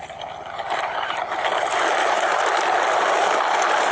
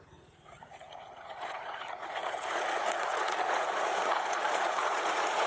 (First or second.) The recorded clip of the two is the first